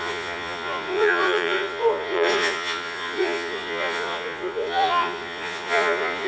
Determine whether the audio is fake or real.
fake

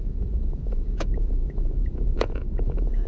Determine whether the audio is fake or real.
fake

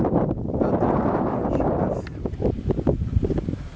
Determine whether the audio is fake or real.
real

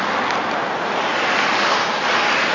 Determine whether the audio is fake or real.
real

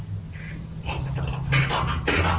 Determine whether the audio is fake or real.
real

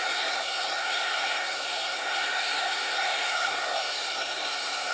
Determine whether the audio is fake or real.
fake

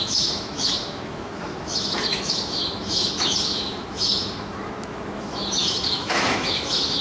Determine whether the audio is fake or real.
fake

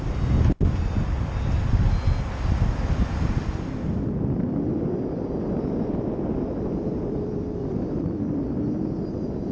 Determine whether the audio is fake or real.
real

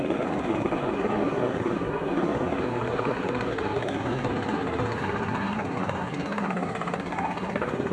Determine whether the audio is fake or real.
fake